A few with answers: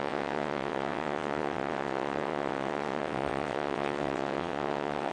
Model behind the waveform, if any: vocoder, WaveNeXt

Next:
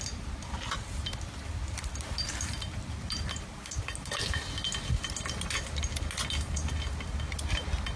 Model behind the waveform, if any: none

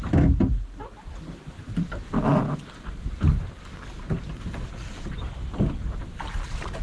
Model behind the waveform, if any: none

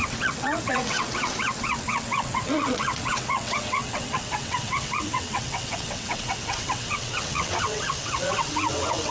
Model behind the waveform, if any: vocoder, WaveNeXt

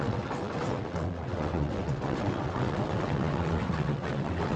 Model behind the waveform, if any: vocoder, WaveNeXt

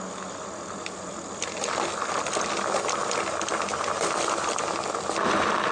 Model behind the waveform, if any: none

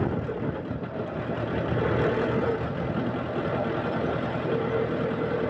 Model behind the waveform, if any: none